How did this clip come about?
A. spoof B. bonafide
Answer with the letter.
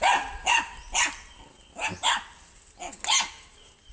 B